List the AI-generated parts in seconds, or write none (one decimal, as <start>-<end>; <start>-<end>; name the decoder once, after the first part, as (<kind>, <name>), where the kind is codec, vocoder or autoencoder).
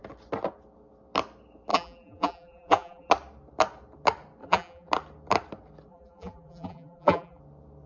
1.7-3.1 (vocoder, BigVGAN v2); 4.4-4.9; 5.9-7.4